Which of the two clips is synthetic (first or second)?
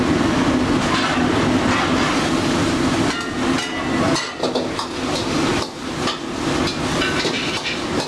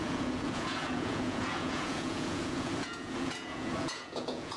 second